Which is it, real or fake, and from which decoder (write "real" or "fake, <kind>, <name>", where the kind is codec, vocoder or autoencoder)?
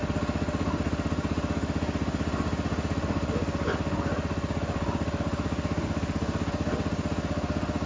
real